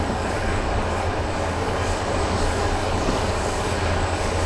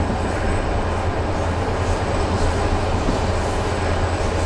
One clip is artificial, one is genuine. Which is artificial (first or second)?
first